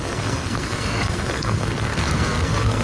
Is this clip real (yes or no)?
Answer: no